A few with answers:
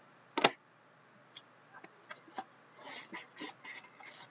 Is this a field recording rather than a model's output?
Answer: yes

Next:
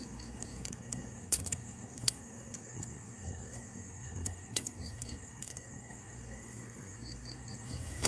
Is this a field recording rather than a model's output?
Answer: no